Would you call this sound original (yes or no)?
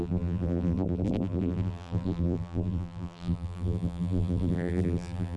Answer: no